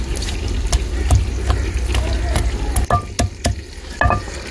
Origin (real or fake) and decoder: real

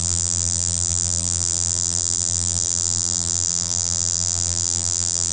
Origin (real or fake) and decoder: fake, vocoder, BigVGAN v2